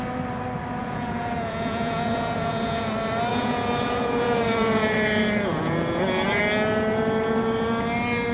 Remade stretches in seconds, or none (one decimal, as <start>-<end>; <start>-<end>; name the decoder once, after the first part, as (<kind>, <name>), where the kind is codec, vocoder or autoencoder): 0.8-2.9 (vocoder, Vocos); 3.3-6.4